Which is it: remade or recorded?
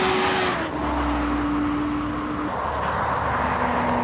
recorded